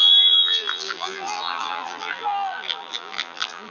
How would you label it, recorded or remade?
remade